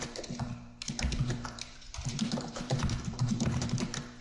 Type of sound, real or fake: fake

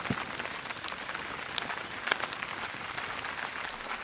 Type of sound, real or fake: real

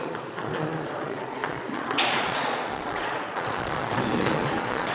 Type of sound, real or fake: fake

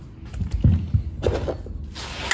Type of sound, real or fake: real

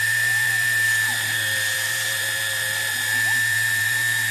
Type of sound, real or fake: fake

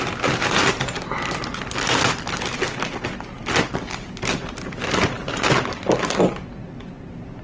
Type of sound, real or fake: real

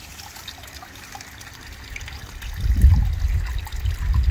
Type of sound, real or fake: real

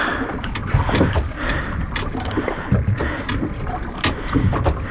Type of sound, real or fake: real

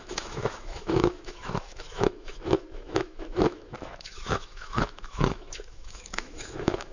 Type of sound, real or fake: fake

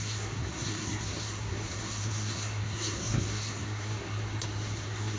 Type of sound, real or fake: fake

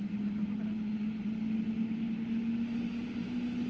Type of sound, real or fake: real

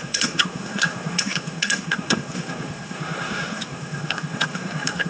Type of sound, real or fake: fake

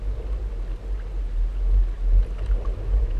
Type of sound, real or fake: real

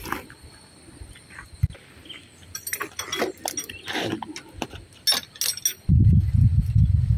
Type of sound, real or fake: real